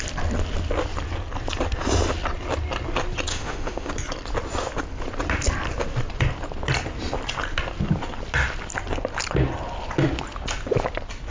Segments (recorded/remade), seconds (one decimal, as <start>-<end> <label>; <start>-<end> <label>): 0.0-3.3 recorded; 3.3-3.9 remade; 3.9-11.3 recorded